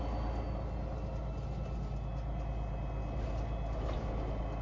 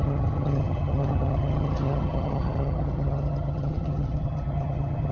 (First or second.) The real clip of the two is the first